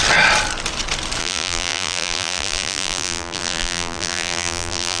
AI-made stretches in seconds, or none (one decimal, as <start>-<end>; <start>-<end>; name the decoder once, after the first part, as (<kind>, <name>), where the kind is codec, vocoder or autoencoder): 1.2-5.0 (vocoder, BigVGAN v2)

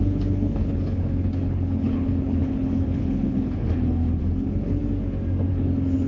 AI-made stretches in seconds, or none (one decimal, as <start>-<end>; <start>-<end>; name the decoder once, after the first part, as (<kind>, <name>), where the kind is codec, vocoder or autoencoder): 0.0-4.8 (codec, HILCodec); 5.5-6.1